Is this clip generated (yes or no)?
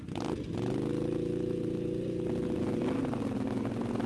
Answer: no